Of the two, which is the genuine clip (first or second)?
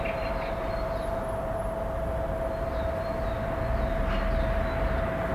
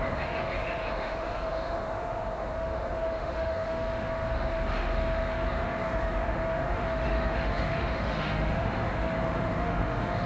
first